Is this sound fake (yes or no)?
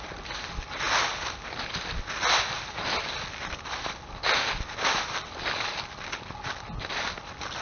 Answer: no